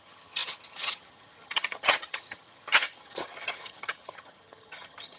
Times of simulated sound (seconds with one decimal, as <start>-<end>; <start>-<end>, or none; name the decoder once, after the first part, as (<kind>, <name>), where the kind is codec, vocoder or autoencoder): 0.0-5.2 (vocoder, HiFi-GAN)